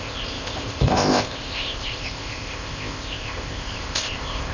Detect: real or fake fake